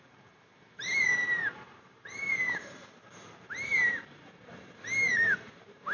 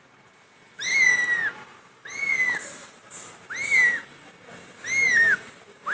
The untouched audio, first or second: second